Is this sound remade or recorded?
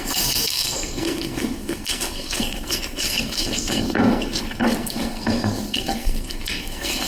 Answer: remade